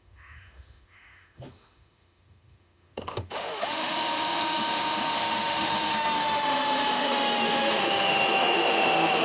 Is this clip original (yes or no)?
no